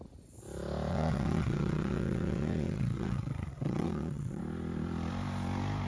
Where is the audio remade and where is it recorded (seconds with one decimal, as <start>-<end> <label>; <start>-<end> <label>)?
0.0-0.9 recorded; 0.9-4.4 remade; 4.4-5.9 recorded